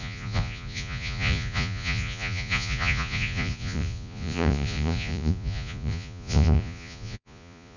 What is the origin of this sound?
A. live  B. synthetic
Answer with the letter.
B